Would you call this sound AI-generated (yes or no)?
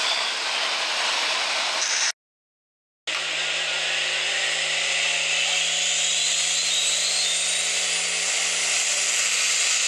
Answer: no